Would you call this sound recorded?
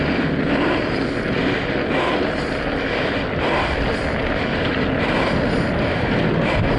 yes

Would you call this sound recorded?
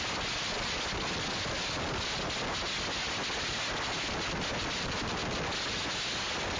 yes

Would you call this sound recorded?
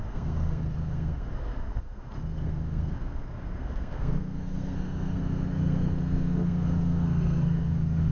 no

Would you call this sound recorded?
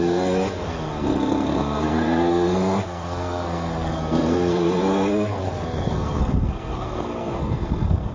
no